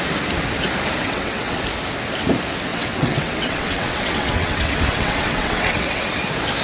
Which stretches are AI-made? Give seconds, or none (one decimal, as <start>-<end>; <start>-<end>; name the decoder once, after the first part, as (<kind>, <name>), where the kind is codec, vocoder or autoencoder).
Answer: 1.0-1.6 (vocoder, WaveNeXt); 2.7-6.1